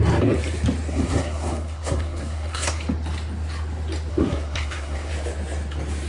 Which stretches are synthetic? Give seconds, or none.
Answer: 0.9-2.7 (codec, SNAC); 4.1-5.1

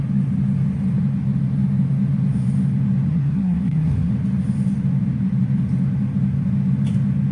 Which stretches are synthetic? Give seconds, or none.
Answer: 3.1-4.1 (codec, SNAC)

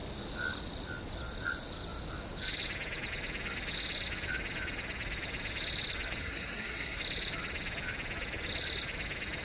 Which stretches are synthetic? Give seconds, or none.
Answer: 6.2-7.0 (codec, SNAC)

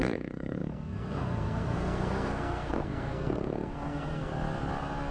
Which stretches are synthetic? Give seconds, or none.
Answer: 0.0-4.3 (codec, SNAC)